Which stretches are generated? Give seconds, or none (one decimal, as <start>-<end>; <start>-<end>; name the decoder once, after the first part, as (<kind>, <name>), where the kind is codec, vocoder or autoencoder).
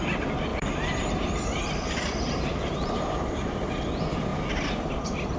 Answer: 0.5-3.7 (vocoder, BigVGAN v2)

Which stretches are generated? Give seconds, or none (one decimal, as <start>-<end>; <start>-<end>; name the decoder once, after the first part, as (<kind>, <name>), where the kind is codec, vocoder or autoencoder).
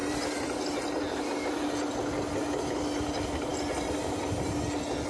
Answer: none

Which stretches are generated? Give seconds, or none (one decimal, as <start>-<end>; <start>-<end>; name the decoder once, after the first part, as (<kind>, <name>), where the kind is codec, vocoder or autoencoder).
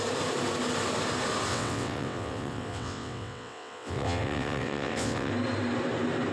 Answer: 1.5-5.3 (vocoder, WaveNeXt)